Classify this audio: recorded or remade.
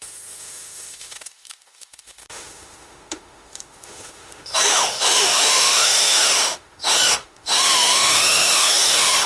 remade